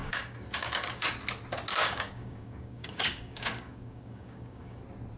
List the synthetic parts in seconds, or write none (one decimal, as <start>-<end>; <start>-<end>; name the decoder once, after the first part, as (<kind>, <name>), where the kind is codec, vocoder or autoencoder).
0.0-1.2 (codec, DAC); 1.7-4.8